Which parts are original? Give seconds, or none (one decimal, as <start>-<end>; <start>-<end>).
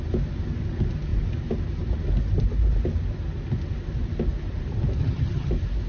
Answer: 0.0-5.0; 5.5-5.9